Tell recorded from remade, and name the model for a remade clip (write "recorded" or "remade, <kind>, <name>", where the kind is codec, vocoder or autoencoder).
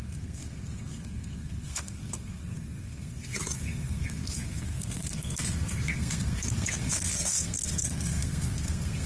remade, codec, SNAC